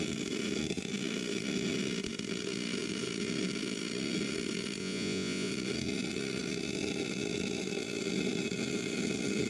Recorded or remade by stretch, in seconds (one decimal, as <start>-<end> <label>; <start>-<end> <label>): 0.0-4.8 recorded; 4.8-5.5 remade; 5.5-9.5 recorded